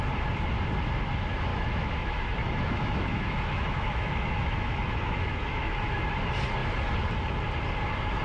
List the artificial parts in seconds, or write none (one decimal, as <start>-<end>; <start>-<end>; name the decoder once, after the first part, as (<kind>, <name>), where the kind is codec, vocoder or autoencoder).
1.5-6.1 (autoencoder, DAC-VAE)